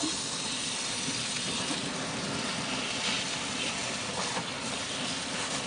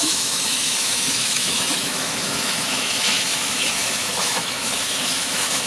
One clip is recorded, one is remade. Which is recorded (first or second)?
first